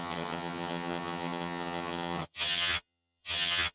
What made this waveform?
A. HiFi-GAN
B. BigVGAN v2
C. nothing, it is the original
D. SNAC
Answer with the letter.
A